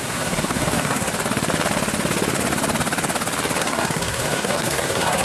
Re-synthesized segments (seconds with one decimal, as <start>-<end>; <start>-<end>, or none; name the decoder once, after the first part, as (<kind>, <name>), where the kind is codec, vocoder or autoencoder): 0.0-1.1 (codec, SNAC); 3.6-5.2